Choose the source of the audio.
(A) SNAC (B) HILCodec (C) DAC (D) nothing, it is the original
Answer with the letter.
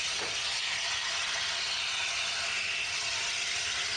D